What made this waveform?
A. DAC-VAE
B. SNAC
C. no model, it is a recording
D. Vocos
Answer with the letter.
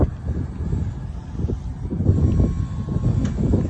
C